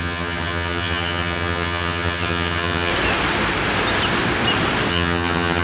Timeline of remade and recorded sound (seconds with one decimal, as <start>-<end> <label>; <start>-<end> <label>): 0.0-2.9 remade; 2.9-4.9 recorded; 4.9-5.6 remade